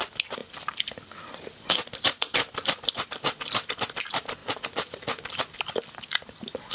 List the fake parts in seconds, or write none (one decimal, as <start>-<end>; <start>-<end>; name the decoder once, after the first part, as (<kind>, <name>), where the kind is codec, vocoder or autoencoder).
none